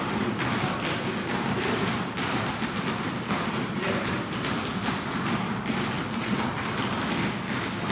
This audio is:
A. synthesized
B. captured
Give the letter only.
B